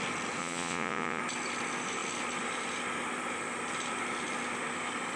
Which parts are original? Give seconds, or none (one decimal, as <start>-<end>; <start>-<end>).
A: 0.0-0.4; 1.2-5.2